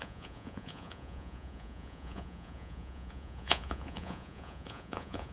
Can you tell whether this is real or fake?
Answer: fake